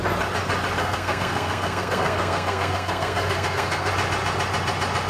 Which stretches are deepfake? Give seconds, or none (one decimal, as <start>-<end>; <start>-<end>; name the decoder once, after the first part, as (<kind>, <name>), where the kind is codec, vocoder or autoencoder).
0.8-3.9 (codec, SNAC)